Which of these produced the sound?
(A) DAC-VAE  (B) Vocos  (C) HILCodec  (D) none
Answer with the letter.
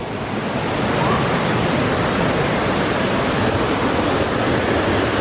D